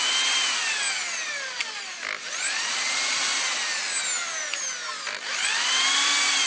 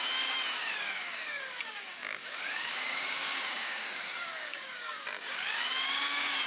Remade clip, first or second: second